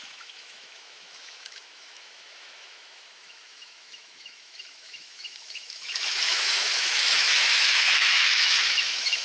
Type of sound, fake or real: fake